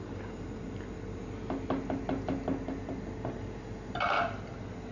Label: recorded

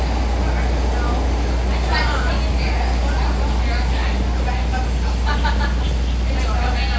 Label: recorded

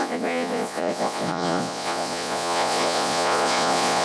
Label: remade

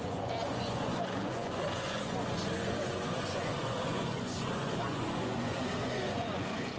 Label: remade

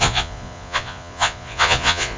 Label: remade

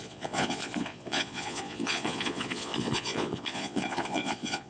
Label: remade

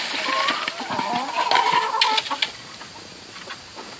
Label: recorded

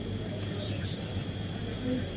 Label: remade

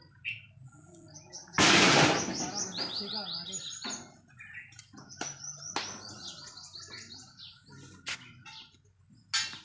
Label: recorded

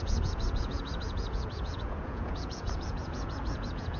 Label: remade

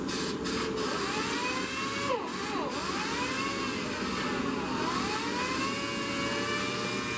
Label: recorded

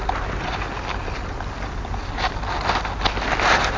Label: recorded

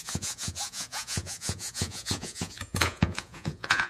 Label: remade